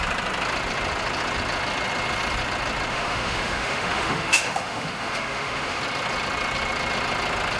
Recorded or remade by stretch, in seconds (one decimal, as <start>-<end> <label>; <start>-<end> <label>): 0.0-2.9 recorded; 2.9-5.8 remade; 5.8-7.6 recorded